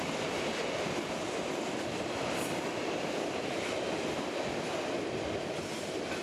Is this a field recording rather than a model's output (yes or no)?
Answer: yes